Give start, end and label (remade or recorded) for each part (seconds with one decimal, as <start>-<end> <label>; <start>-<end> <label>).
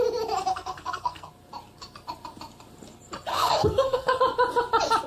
0.0-0.5 recorded; 0.5-1.3 remade; 1.3-3.3 recorded; 3.3-4.2 remade; 4.2-5.1 recorded